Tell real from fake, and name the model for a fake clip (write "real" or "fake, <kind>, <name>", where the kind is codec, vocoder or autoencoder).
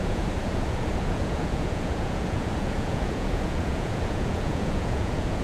fake, vocoder, Vocos